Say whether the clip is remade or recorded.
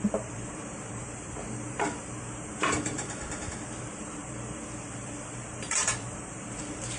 remade